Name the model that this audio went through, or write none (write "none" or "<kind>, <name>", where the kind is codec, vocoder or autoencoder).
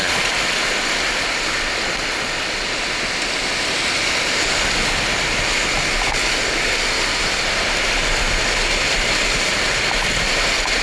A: none